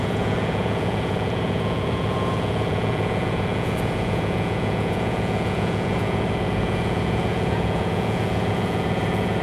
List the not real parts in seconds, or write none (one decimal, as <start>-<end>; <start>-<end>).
0.0-9.4